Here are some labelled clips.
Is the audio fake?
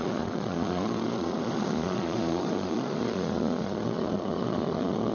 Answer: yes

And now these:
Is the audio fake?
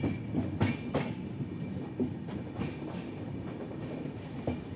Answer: no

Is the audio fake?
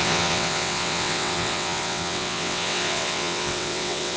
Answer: yes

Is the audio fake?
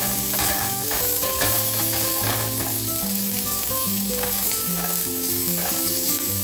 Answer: yes